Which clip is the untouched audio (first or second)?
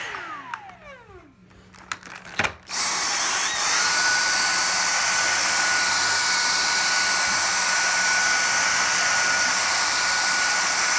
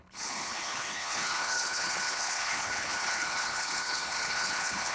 first